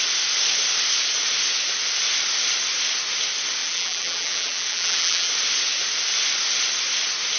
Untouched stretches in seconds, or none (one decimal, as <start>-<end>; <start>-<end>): 0.0-3.6; 5.3-7.4